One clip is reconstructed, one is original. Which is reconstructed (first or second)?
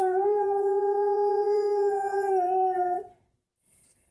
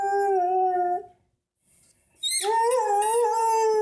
first